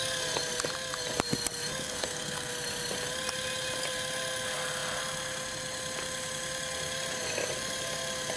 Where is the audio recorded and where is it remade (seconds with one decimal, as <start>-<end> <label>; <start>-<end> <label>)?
0.0-1.8 recorded; 1.8-2.5 remade; 2.5-8.4 recorded